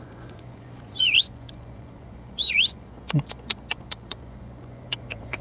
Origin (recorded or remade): remade